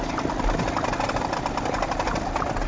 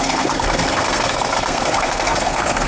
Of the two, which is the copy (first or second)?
second